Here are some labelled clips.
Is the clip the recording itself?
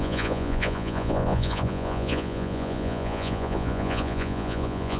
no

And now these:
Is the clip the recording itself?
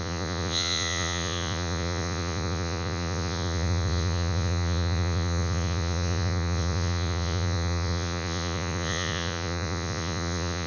no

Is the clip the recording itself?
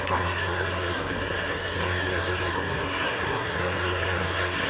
no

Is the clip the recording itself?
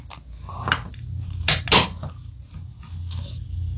yes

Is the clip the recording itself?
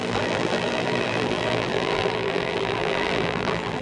no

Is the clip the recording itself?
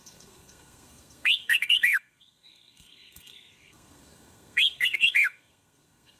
no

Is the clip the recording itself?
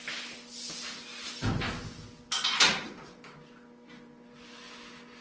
yes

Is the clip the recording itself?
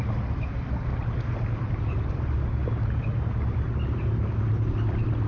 yes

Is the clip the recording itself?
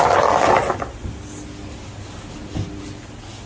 yes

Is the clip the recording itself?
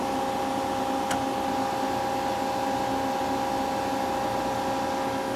yes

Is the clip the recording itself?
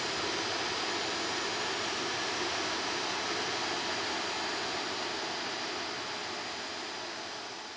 yes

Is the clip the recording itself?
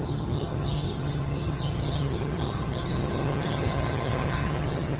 no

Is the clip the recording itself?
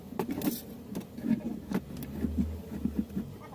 yes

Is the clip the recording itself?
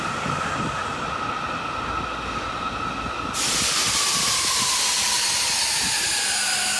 yes